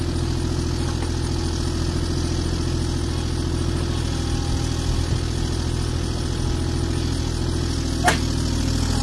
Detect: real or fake real